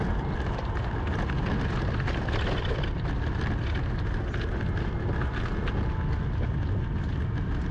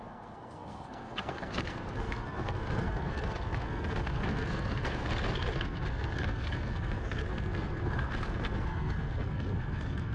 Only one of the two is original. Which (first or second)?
first